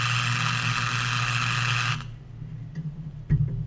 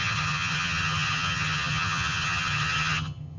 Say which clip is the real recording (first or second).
first